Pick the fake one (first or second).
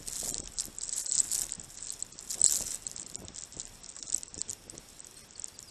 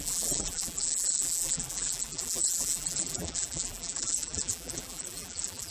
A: second